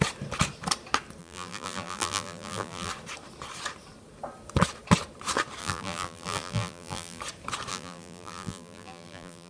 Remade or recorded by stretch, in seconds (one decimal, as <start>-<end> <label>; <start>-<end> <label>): 0.0-1.2 recorded; 1.2-2.9 remade; 2.9-5.6 recorded; 5.6-7.2 remade; 7.2-7.7 recorded; 7.7-9.5 remade